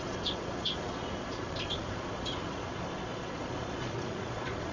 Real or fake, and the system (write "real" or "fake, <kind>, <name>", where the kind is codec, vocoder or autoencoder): fake, vocoder, Vocos